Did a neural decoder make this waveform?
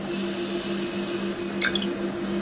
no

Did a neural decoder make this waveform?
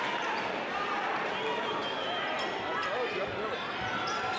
no